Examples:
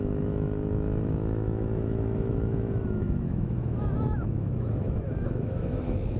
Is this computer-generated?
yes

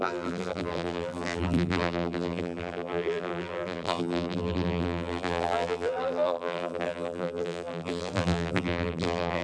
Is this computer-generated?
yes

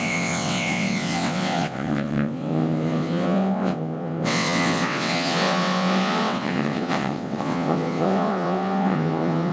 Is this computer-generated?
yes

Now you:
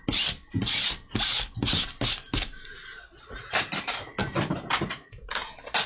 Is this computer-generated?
no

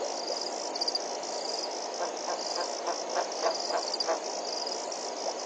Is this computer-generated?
no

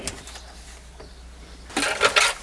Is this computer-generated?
no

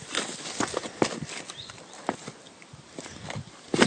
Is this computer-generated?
no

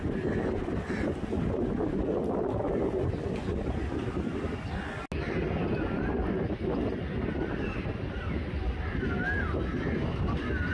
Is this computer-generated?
no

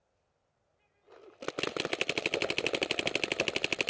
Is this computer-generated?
no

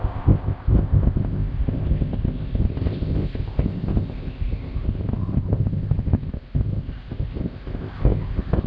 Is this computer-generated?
yes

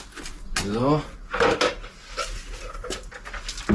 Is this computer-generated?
no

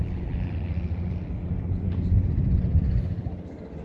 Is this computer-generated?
no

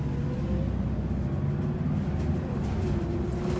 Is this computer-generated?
no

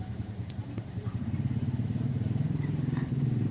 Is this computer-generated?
yes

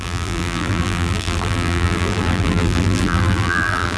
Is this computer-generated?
yes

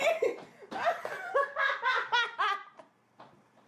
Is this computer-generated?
no